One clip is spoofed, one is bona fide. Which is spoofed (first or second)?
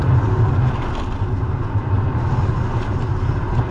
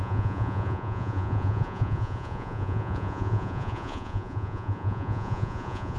second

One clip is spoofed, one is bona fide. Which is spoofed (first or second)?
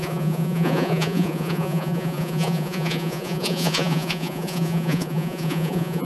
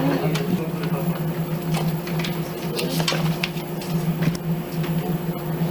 first